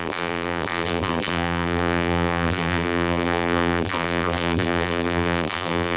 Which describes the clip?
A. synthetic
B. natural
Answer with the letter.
A